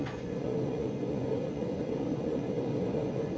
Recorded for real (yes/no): no